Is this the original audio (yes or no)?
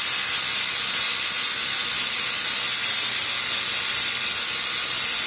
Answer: yes